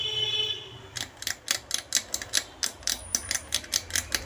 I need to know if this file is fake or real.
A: real